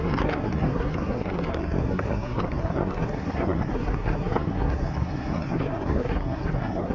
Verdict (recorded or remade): remade